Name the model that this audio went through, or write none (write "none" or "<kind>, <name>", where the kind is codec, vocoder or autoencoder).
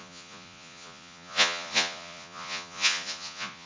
vocoder, Vocos